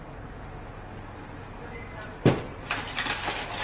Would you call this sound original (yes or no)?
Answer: yes